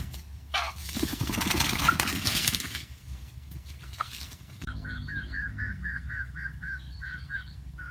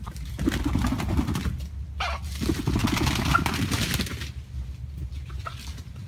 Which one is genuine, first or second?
second